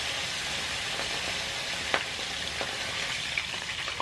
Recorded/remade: recorded